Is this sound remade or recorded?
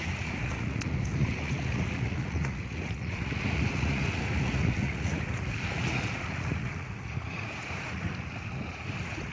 remade